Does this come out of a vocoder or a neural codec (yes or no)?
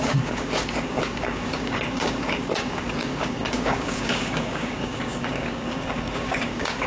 yes